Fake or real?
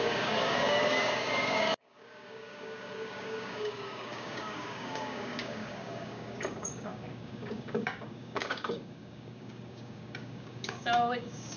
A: fake